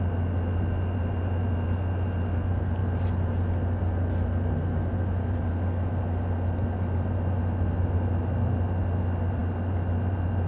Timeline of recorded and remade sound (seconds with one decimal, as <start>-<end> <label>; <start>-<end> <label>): 0.0-10.5 recorded